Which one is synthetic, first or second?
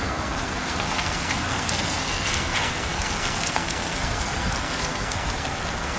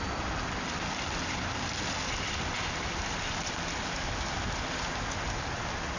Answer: first